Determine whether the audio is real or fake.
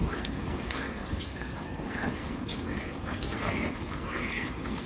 fake